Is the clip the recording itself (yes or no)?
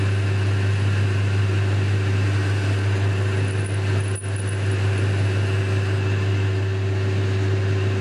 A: yes